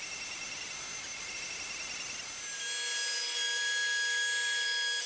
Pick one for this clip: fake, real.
real